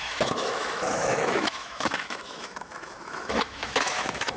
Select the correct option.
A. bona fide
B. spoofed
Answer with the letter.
B